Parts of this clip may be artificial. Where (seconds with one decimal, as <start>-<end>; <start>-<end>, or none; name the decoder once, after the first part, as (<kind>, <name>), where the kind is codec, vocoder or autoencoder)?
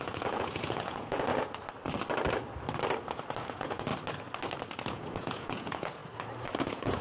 0.0-1.3 (vocoder, Vocos); 3.4-3.9; 4.9-6.0; 6.6-7.0